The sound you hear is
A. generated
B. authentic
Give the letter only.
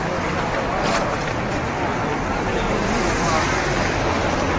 B